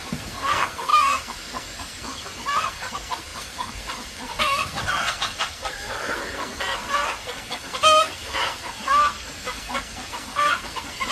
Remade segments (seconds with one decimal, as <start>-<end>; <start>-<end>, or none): 0.0-11.1